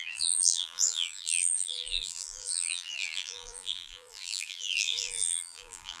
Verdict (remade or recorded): remade